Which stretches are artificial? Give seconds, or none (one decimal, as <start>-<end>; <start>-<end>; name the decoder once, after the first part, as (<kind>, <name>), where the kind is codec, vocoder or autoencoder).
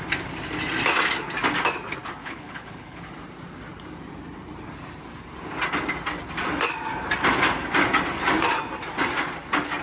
2.2-3.1 (codec, HILCodec)